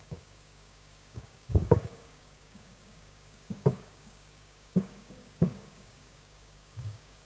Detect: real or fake fake